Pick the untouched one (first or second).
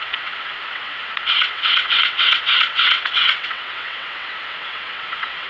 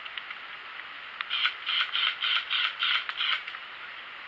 second